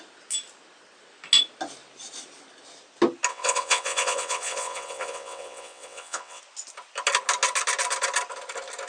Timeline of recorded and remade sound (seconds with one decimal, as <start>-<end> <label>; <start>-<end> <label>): 0.0-3.3 recorded; 3.3-6.4 remade; 6.4-8.9 recorded